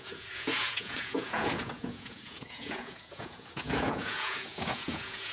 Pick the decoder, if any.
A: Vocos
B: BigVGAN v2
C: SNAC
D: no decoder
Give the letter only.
A